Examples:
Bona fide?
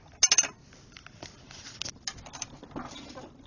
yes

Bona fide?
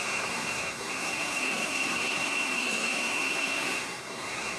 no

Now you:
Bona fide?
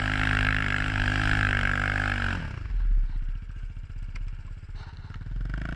yes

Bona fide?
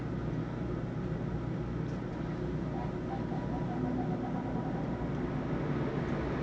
yes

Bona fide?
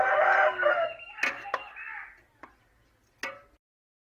yes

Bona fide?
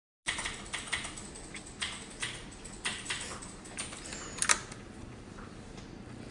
yes